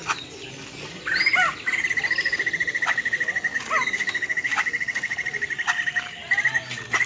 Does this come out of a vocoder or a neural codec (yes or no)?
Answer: no